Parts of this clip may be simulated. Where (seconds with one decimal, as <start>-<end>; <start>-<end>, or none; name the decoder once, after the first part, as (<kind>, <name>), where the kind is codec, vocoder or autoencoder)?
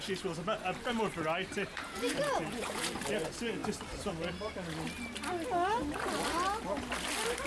1.7-2.9 (vocoder, Vocos)